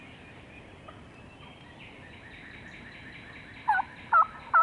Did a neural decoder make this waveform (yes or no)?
yes